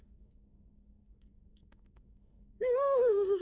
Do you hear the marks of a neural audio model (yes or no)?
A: yes